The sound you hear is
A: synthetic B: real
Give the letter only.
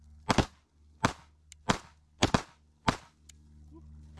B